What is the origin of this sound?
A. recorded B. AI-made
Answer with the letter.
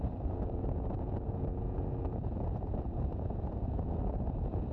B